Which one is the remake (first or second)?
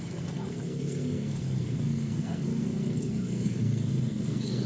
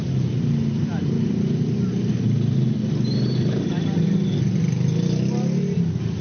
first